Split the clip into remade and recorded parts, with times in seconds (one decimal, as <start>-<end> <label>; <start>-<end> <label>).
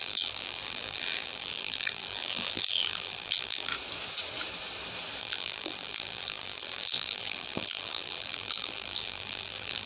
0.0-3.7 remade; 3.7-5.2 recorded; 5.2-9.9 remade